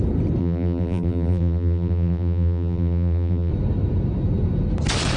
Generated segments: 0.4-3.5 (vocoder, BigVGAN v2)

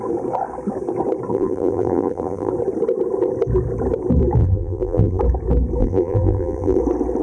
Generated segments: 1.3-2.5 (vocoder, BigVGAN v2); 4.4-5.2; 5.8-6.8

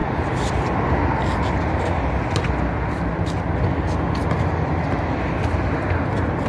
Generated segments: 0.0-0.9 (vocoder, BigVGAN v2)

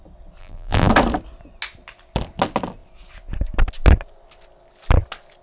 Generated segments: 0.4-0.9 (vocoder, BigVGAN v2)

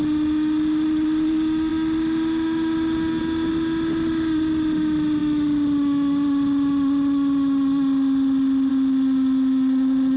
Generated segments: none